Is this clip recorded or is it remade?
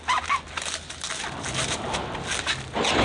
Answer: recorded